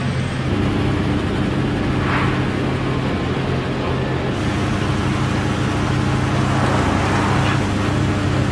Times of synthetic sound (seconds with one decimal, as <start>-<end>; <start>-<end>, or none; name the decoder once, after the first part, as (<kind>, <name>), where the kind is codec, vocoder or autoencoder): none